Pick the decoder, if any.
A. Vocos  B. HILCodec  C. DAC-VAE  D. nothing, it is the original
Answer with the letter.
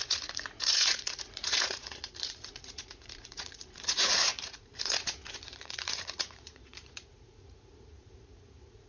A